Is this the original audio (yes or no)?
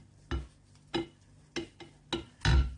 yes